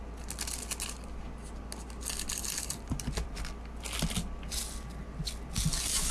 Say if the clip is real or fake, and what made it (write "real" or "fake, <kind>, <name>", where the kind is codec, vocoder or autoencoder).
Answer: real